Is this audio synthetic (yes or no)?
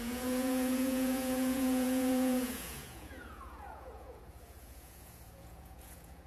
yes